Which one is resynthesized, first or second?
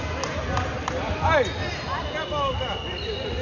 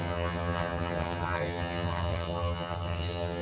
second